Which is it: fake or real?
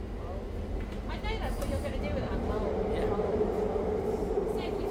real